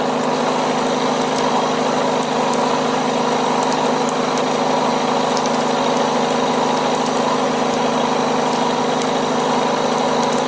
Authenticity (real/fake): real